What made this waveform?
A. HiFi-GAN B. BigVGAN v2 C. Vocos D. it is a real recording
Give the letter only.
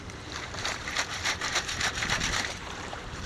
B